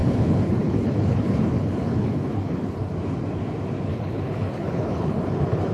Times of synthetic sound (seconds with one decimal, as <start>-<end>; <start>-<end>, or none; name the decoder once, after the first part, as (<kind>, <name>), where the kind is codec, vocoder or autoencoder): 0.0-2.9 (codec, HILCodec); 3.9-5.7